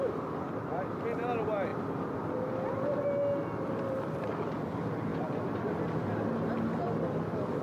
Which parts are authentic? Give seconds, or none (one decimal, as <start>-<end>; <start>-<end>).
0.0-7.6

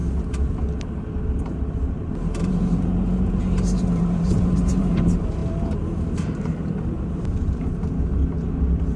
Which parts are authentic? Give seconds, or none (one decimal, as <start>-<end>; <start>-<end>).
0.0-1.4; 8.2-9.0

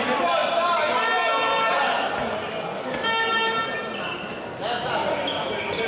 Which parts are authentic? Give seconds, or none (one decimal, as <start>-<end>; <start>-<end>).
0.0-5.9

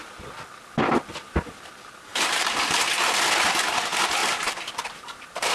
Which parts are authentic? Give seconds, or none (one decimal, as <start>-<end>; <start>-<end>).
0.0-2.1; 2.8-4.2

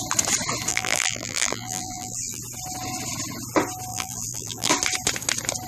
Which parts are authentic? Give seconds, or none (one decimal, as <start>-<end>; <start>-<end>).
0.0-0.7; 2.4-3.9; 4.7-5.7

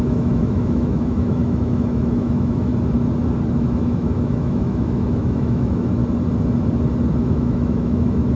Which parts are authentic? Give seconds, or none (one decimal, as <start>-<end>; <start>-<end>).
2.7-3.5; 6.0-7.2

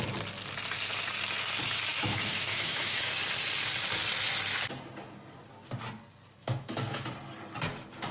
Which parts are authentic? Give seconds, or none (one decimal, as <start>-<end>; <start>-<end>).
0.0-1.9; 3.1-6.4; 7.1-8.1

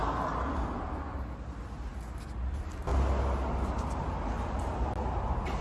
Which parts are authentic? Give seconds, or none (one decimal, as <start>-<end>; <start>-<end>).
0.0-5.6